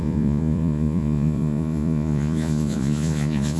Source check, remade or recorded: remade